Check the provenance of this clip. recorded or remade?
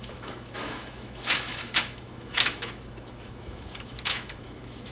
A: remade